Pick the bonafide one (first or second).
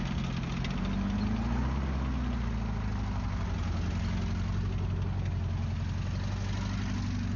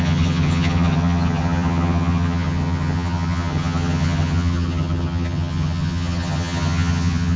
first